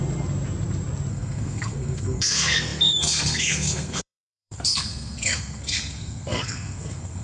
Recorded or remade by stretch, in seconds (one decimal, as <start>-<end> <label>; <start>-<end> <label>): 0.0-1.1 recorded; 1.1-7.2 remade